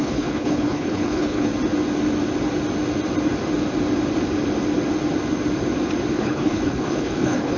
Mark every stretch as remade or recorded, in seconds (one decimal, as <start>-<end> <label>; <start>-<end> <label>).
0.0-1.5 remade; 1.5-6.1 recorded; 6.1-7.6 remade